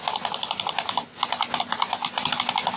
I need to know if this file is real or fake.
real